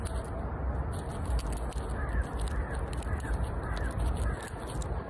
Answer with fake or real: real